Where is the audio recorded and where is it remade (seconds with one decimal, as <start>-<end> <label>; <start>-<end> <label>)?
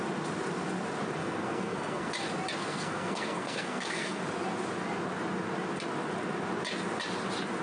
0.0-1.2 recorded; 1.2-2.1 remade; 2.1-2.6 recorded; 2.6-4.2 remade; 4.2-7.6 recorded